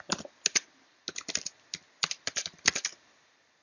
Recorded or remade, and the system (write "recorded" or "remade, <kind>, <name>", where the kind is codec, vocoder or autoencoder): recorded